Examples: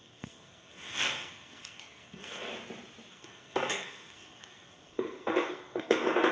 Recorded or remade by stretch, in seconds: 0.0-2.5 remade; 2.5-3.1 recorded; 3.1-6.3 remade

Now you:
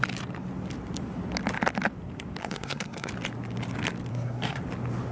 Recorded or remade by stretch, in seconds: 0.0-2.4 recorded; 2.4-3.1 remade; 3.1-4.1 recorded; 4.1-4.6 remade; 4.6-5.1 recorded

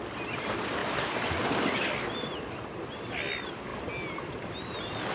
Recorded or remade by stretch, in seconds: 0.0-5.1 recorded

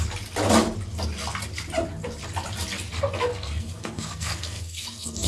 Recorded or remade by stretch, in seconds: 0.0-3.3 recorded; 3.3-5.3 remade

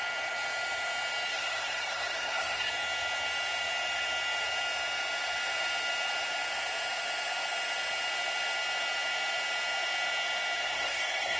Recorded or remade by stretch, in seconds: 0.0-1.3 recorded; 1.3-2.7 remade; 2.7-10.6 recorded; 10.6-11.4 remade

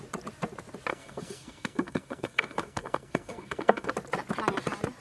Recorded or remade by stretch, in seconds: 0.0-0.9 recorded; 0.9-3.9 remade; 3.9-5.0 recorded